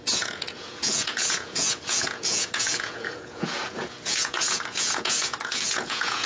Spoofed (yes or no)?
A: yes